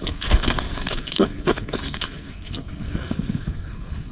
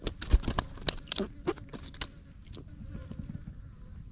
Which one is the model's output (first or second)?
first